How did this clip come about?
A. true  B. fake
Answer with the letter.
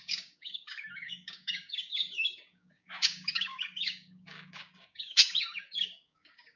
B